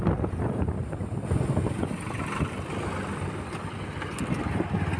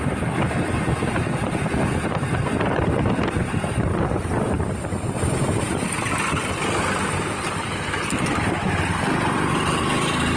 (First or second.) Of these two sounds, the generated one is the second